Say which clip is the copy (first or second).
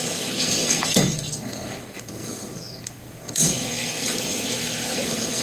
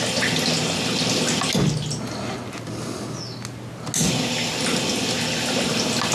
first